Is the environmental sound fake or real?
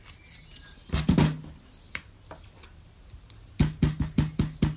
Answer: real